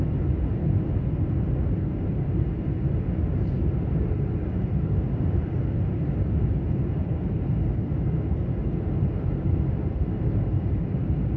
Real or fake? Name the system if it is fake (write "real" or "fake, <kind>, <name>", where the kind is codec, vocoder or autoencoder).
fake, vocoder, BigVGAN v2